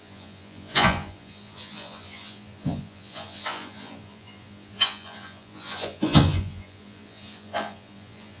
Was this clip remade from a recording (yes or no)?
yes